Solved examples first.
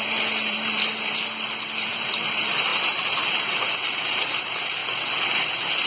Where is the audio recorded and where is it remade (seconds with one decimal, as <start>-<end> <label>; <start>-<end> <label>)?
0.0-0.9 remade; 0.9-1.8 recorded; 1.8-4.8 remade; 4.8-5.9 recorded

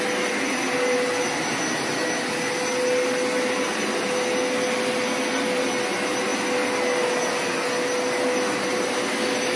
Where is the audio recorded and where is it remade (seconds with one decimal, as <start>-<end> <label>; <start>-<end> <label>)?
0.0-9.6 recorded

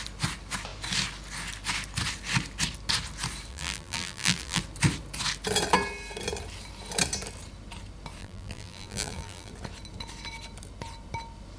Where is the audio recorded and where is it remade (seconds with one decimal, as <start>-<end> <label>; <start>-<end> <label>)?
0.0-3.5 recorded; 3.5-4.6 remade; 4.6-8.2 recorded; 8.2-9.5 remade; 9.5-11.6 recorded